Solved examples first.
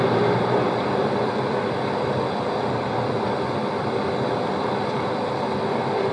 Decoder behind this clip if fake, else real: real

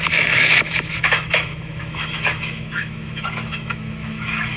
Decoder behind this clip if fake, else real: fake, autoencoder, DAC-VAE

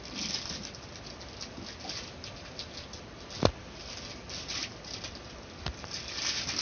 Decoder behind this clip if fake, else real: real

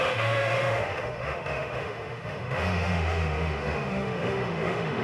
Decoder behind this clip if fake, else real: fake, autoencoder, DAC-VAE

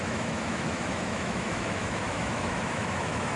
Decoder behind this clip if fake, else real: fake, autoencoder, DAC-VAE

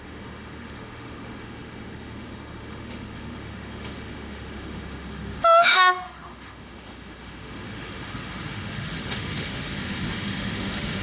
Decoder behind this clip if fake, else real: fake, autoencoder, DAC-VAE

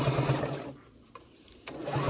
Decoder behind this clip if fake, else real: real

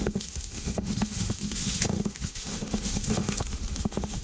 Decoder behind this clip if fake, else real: fake, autoencoder, DAC-VAE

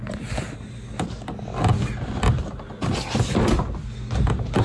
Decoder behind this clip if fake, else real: real